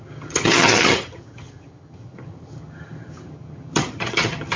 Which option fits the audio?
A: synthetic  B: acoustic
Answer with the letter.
A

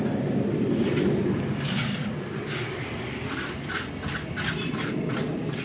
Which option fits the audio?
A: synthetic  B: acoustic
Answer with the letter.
B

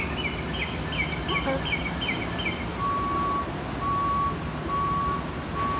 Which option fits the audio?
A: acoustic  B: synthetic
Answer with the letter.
A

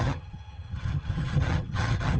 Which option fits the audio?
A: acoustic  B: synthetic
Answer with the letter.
B